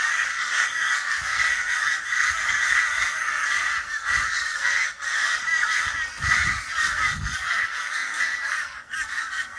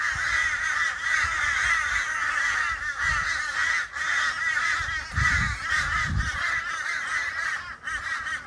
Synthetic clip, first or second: first